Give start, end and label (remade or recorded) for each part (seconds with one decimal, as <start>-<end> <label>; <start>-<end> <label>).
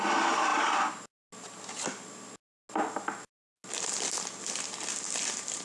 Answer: 0.0-5.6 recorded